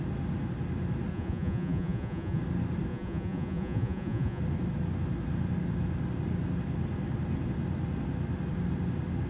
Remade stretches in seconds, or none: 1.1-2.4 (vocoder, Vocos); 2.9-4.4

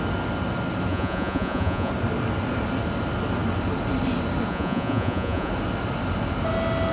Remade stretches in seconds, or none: 0.9-1.9 (vocoder, Vocos); 4.5-5.5

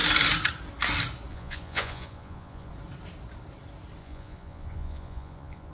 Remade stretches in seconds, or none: 1.3-2.7 (vocoder, Vocos); 4.0-5.7

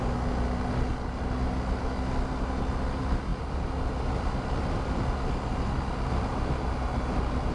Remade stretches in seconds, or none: none

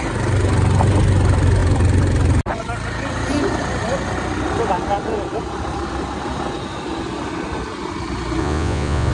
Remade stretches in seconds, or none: 8.4-9.1 (vocoder, Vocos)